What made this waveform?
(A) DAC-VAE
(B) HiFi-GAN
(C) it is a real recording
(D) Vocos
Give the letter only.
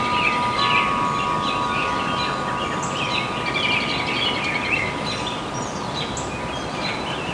C